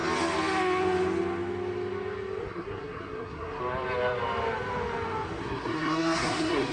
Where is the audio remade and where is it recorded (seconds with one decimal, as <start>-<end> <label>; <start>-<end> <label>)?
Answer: 0.0-2.4 recorded; 2.4-3.6 remade; 3.6-5.4 recorded; 5.4-6.7 remade